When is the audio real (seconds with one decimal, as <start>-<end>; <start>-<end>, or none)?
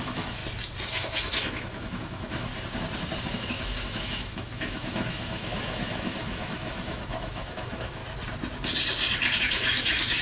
0.4-0.9; 2.5-3.2; 8.0-9.4